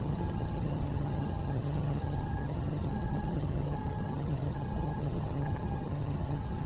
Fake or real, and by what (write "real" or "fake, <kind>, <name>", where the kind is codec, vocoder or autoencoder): fake, vocoder, HiFi-GAN